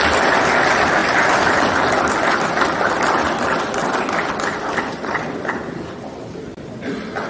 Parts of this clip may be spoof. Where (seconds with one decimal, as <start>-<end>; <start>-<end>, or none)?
none